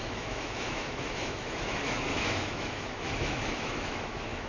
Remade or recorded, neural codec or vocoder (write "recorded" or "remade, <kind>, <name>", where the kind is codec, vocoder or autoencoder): remade, autoencoder, DAC-VAE